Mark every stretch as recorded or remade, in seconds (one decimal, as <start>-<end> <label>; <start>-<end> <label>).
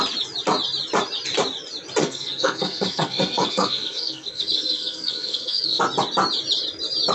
0.0-2.0 recorded; 2.0-5.8 remade; 5.8-7.1 recorded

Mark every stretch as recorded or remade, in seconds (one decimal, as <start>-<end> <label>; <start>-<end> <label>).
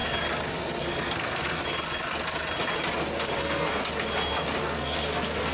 0.0-0.8 recorded; 0.8-1.6 remade; 1.6-3.4 recorded; 3.4-3.8 remade; 3.8-4.6 recorded; 4.6-5.5 remade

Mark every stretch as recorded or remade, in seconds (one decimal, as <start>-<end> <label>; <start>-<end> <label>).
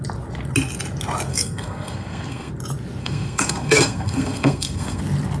0.0-1.3 recorded; 1.3-2.5 remade; 2.5-3.0 recorded; 3.0-5.0 remade; 5.0-5.4 recorded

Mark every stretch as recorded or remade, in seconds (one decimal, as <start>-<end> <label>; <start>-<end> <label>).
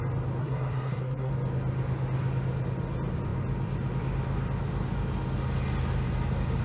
0.0-0.4 recorded; 0.4-1.3 remade; 1.3-6.6 recorded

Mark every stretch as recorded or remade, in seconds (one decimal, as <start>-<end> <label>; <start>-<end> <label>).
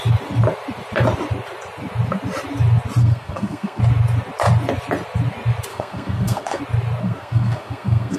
0.0-3.0 recorded; 3.0-3.8 remade; 3.8-5.7 recorded; 5.7-6.6 remade; 6.6-7.0 recorded; 7.0-8.2 remade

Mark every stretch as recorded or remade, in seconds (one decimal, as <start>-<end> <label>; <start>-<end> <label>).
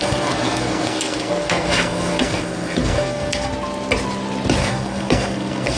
0.0-3.5 remade; 3.5-4.6 recorded; 4.6-5.8 remade